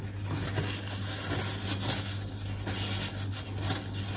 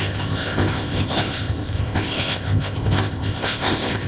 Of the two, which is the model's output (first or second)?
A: second